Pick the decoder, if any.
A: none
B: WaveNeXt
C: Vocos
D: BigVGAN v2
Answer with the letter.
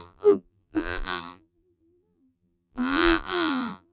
D